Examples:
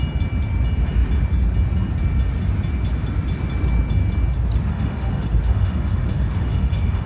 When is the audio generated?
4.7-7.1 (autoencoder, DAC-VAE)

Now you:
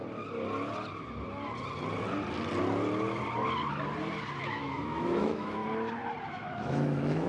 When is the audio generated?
4.4-5.6 (autoencoder, DAC-VAE); 6.3-7.3